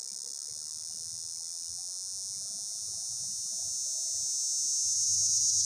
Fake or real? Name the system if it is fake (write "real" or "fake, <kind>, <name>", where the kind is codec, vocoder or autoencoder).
real